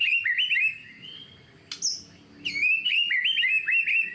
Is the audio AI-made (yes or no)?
no